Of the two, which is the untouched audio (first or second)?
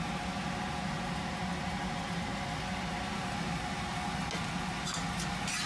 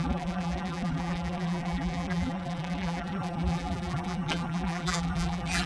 first